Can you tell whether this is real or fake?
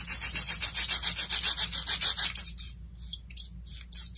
real